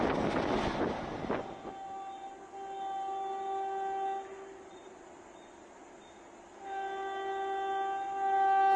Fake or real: real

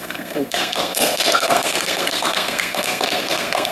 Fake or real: fake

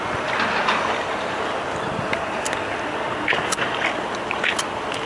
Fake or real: real